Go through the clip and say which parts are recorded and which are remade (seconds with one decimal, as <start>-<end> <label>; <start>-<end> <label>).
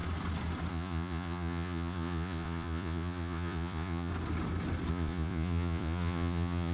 0.0-0.7 recorded; 0.7-4.1 remade; 4.1-4.9 recorded; 4.9-6.7 remade